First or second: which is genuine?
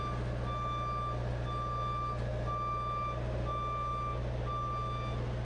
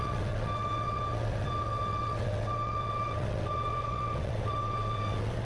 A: first